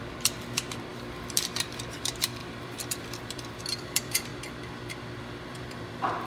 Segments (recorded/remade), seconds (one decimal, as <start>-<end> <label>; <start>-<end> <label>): 0.0-4.3 remade; 4.3-5.2 recorded; 5.2-6.3 remade